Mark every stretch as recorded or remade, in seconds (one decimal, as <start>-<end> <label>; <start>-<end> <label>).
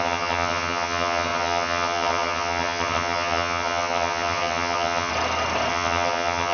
0.0-5.1 remade; 5.1-5.7 recorded; 5.7-6.5 remade